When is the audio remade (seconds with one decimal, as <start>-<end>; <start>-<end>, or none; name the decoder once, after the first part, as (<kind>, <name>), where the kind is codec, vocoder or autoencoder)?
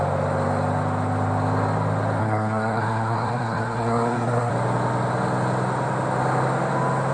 2.2-4.5 (codec, SNAC)